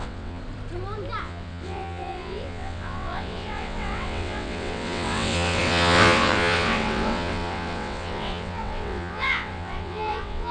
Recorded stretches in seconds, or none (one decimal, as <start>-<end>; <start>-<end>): 0.4-1.2

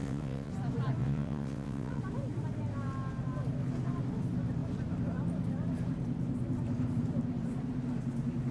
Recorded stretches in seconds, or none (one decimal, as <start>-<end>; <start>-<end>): 0.5-1.0; 2.0-8.5